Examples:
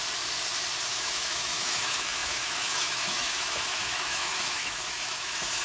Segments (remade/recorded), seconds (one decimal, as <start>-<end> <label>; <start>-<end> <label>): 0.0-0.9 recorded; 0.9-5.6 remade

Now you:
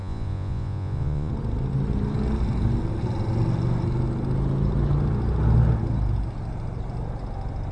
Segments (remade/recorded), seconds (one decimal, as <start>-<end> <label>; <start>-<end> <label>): 0.0-1.3 remade; 1.3-7.7 recorded

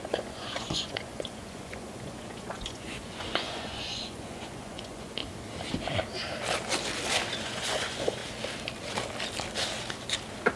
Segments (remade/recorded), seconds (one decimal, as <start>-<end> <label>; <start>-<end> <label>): 0.0-5.2 remade; 5.2-7.4 recorded; 7.4-8.2 remade; 8.2-10.6 recorded